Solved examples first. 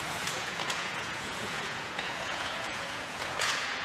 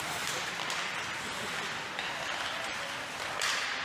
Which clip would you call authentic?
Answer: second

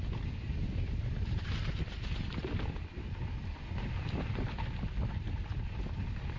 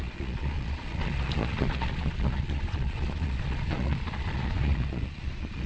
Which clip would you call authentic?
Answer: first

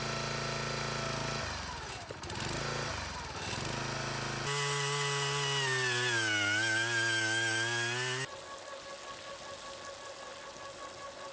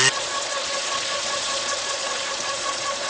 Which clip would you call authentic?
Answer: first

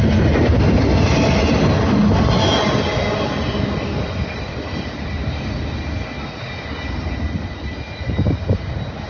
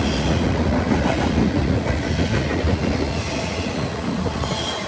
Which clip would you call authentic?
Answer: first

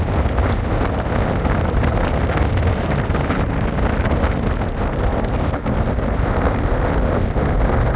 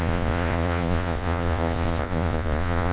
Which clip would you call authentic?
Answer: first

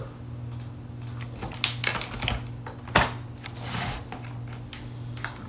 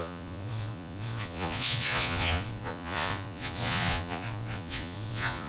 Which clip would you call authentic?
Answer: first